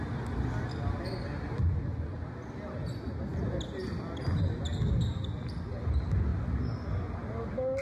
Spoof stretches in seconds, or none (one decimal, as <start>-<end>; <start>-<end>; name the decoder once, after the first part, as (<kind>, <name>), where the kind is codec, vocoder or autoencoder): none